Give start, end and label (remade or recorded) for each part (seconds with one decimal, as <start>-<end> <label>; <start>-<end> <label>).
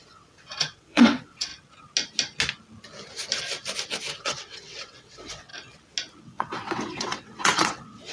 0.0-1.5 remade; 1.5-4.2 recorded; 4.2-5.5 remade; 5.5-6.2 recorded; 6.2-8.1 remade